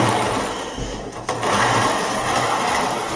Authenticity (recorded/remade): recorded